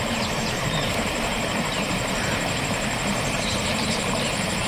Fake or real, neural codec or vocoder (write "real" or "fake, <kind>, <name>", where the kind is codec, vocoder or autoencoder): fake, vocoder, BigVGAN v2